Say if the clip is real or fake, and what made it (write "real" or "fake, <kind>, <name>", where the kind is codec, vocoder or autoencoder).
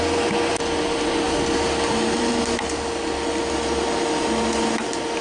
real